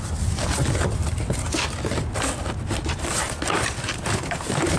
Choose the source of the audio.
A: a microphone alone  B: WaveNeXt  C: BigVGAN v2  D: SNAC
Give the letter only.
A